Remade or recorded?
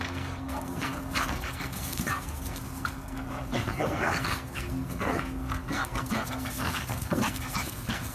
remade